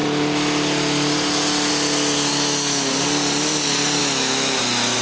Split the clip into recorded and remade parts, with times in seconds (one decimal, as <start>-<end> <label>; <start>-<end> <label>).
0.0-2.3 recorded; 2.3-2.9 remade; 2.9-4.0 recorded; 4.0-4.6 remade; 4.6-5.0 recorded